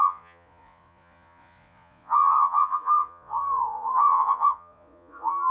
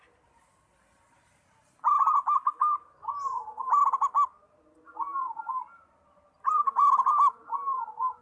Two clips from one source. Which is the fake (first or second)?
first